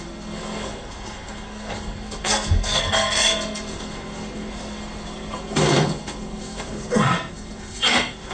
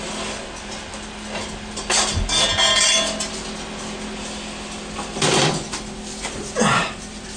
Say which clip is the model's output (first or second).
first